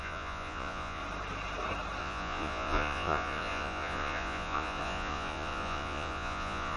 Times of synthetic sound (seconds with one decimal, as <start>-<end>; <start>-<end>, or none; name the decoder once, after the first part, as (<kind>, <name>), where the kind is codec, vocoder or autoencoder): 0.0-1.0 (vocoder, Vocos); 2.0-6.8